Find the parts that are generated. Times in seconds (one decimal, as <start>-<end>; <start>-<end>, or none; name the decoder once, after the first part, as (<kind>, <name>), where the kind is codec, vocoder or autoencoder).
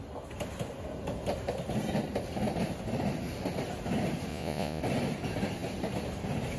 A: 4.3-4.8 (vocoder, Vocos)